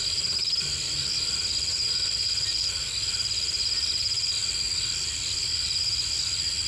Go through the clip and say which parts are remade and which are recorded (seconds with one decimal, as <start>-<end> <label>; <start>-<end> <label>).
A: 0.0-6.7 recorded